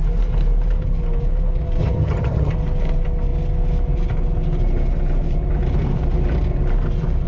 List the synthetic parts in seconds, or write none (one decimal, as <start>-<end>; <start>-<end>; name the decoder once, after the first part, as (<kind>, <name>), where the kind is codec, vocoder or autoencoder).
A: 1.8-2.5 (vocoder, HiFi-GAN)